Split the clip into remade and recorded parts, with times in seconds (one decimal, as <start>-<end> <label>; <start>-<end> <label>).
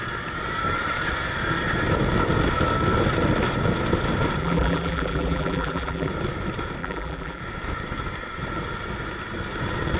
0.0-4.4 recorded; 4.4-6.1 remade; 6.1-6.8 recorded; 6.8-7.4 remade; 7.4-10.0 recorded